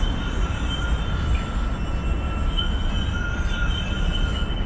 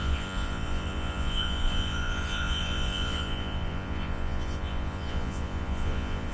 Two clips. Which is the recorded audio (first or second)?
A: first